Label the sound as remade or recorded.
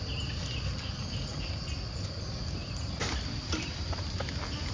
recorded